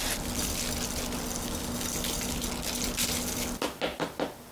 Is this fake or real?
real